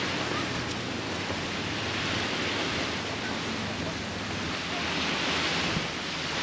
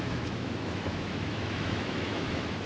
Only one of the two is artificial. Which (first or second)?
second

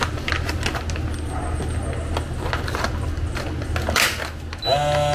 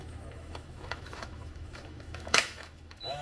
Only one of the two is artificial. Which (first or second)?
second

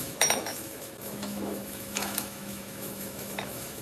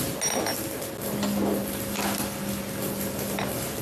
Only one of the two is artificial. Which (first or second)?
first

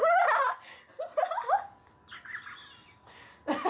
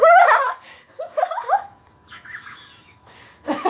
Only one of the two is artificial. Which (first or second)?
second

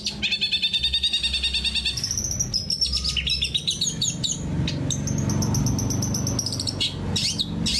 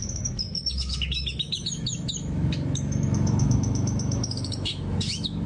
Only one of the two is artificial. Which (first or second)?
second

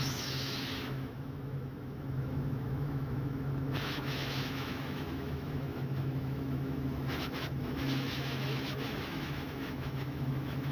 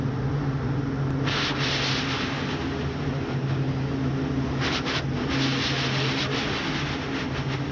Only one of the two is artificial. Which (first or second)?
first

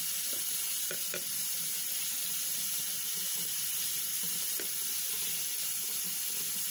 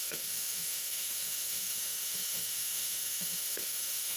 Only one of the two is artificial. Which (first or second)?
second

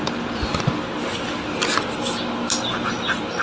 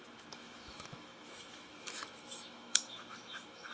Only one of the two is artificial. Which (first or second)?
second